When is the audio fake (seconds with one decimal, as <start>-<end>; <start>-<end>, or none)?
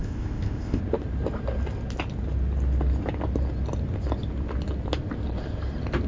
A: 0.0-0.8